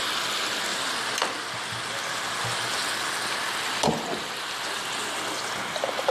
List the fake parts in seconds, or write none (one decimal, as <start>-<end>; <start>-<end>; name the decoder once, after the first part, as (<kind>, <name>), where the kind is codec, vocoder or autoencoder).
none